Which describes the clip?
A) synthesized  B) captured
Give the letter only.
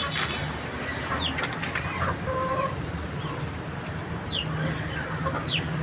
B